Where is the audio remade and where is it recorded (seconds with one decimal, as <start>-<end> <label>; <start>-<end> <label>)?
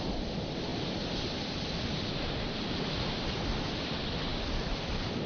0.0-5.3 recorded